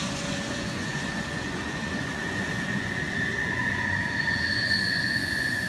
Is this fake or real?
fake